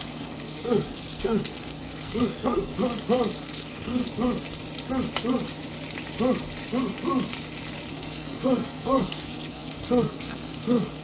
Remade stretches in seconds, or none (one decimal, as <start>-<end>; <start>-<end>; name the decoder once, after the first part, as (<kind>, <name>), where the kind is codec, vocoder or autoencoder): 0.0-2.7 (codec, SNAC); 3.4-4.0; 7.9-11.0